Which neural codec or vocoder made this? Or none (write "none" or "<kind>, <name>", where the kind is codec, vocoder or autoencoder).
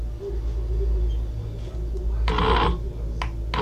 none